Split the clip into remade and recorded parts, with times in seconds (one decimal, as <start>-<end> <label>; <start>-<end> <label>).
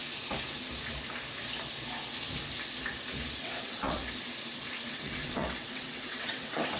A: 0.0-3.4 recorded; 3.4-4.0 remade; 4.0-4.9 recorded; 4.9-6.8 remade